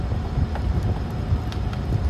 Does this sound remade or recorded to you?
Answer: recorded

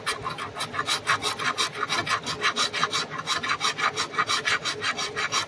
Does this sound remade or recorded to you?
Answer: recorded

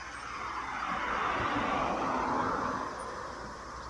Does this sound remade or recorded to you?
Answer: recorded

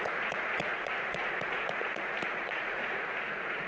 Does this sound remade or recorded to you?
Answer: remade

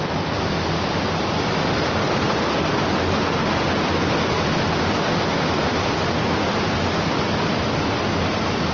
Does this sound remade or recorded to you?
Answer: recorded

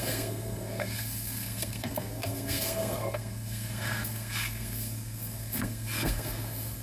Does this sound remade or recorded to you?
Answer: remade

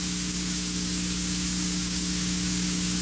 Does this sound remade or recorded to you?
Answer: remade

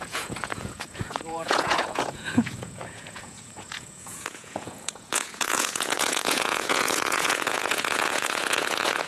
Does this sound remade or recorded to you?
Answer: remade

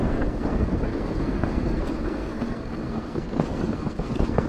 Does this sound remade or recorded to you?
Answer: remade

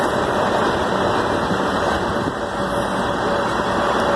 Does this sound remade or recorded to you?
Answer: recorded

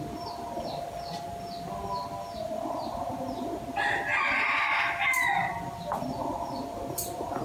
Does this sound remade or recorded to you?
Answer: recorded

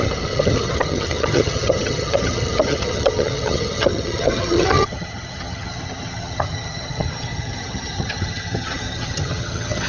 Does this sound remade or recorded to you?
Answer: remade